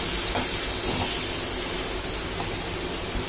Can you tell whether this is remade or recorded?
recorded